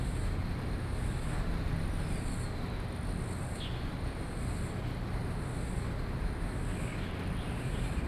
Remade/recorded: recorded